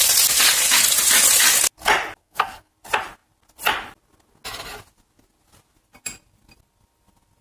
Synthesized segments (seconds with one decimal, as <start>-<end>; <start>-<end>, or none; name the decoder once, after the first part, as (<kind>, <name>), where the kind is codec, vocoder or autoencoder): 2.2-2.7 (codec, SNAC)